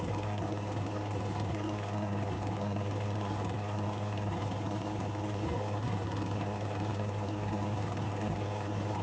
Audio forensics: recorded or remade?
remade